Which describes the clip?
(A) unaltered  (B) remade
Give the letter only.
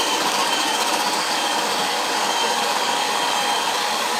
B